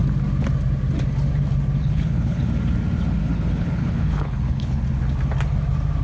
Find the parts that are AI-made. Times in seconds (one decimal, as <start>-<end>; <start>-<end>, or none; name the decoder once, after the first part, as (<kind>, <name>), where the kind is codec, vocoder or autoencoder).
1.8-2.5 (codec, HILCodec); 3.2-4.8